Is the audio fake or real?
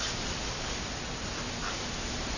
real